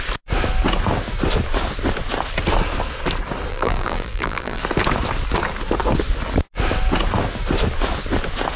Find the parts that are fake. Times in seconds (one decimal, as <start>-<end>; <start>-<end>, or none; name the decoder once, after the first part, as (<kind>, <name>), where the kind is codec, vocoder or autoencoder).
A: 3.5-4.6 (vocoder, BigVGAN v2)